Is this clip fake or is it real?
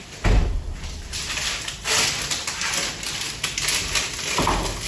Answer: real